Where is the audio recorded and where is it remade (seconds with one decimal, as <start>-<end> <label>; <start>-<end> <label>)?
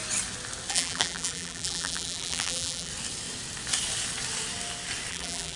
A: 0.0-0.7 recorded; 0.7-2.9 remade; 2.9-5.1 recorded; 5.1-5.6 remade